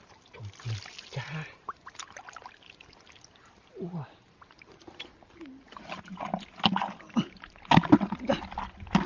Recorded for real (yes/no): yes